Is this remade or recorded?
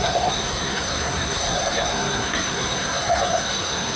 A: remade